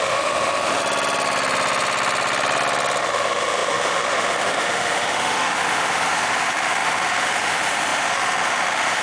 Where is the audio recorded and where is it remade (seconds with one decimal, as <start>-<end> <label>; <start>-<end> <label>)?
0.0-0.8 remade; 0.8-3.0 recorded; 3.0-9.0 remade